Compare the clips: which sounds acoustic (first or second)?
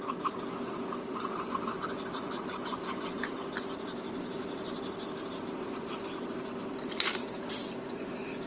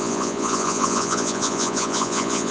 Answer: first